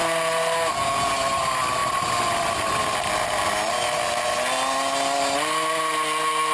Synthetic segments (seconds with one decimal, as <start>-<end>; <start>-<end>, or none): none